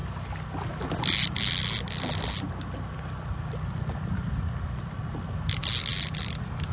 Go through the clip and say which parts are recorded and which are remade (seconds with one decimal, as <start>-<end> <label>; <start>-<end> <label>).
0.0-6.7 recorded